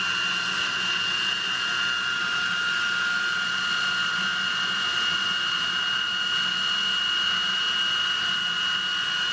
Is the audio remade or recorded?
recorded